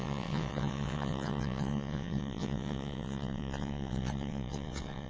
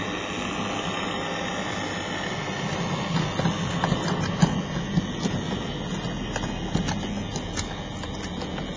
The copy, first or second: first